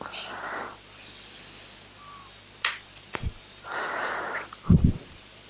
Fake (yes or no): no